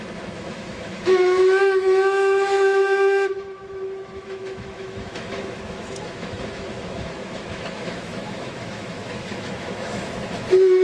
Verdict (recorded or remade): remade